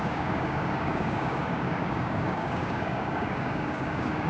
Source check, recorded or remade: remade